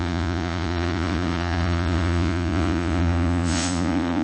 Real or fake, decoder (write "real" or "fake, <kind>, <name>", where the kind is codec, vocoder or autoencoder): fake, vocoder, Vocos